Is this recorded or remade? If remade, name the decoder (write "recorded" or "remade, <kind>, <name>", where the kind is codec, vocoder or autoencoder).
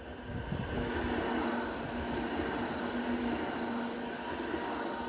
recorded